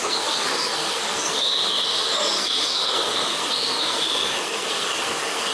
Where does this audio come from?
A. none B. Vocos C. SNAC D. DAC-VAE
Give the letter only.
C